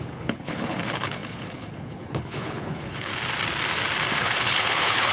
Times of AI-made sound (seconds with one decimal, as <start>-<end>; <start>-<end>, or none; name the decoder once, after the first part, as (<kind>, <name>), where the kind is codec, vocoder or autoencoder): 0.0-3.1 (codec, HILCodec); 4.2-5.1